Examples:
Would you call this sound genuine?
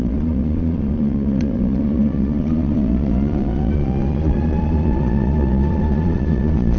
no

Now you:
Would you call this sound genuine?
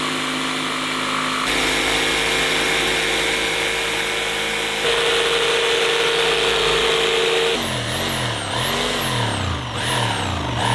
yes